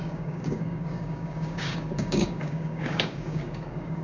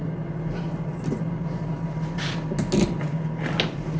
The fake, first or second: first